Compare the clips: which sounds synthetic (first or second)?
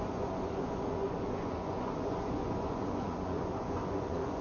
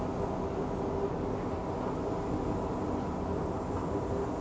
first